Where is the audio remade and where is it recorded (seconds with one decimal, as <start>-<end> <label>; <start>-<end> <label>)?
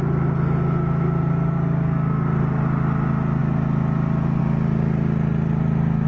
0.0-6.1 recorded